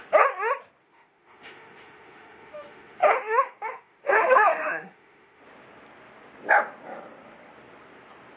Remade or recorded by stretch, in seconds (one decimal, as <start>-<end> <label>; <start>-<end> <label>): 0.0-0.8 recorded; 0.8-5.4 remade; 5.4-8.4 recorded